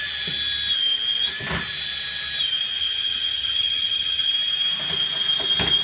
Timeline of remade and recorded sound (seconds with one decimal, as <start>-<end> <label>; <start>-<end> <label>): 0.0-2.8 recorded; 2.8-4.3 remade; 4.3-5.8 recorded